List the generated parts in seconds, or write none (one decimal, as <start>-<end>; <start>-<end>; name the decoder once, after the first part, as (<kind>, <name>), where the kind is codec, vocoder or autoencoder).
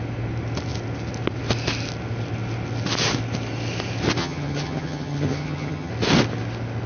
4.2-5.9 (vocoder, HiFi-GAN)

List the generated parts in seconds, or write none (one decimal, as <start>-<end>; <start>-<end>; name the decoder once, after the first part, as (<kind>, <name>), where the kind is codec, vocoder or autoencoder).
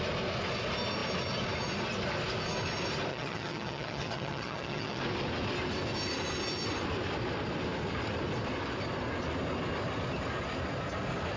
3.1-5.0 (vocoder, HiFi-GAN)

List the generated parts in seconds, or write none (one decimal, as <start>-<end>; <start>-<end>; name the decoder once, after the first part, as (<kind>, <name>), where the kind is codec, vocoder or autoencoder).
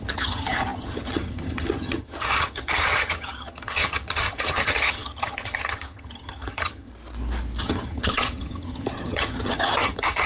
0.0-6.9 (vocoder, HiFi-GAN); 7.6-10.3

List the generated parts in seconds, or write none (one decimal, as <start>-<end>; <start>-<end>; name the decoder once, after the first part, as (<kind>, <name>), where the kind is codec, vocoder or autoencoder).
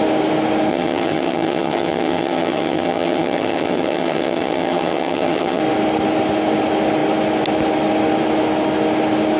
0.7-5.6 (vocoder, HiFi-GAN)